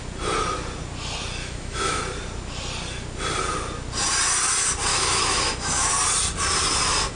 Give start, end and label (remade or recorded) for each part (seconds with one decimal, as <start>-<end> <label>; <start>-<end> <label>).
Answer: 0.0-1.4 recorded; 1.4-2.0 remade; 2.0-4.9 recorded; 4.9-5.9 remade; 5.9-7.2 recorded